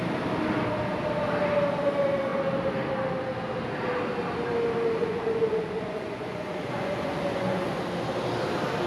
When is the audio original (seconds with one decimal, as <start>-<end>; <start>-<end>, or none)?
0.0-5.0; 7.8-8.9